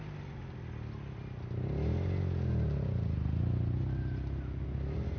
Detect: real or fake real